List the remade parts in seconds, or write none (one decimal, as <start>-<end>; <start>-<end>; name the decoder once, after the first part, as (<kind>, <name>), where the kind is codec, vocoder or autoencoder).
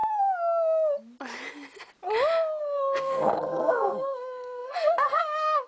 2.6-5.7 (codec, SNAC)